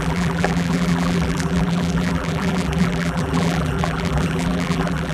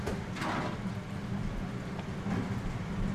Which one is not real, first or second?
first